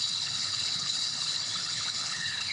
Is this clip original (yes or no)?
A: no